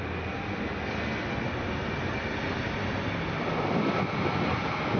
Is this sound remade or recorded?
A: recorded